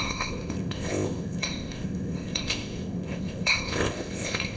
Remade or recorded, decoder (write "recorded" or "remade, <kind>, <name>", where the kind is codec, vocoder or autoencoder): remade, codec, ZipCodec